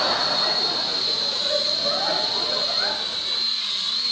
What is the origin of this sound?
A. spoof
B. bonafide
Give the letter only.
A